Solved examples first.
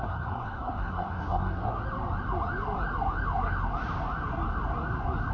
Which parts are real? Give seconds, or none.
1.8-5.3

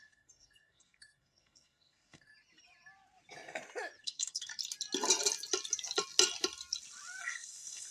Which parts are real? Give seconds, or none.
2.3-4.0; 4.5-7.2